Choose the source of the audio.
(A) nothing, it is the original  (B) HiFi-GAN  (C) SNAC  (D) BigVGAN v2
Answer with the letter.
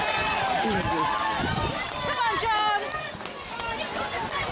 D